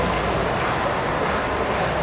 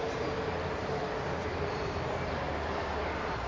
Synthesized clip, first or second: second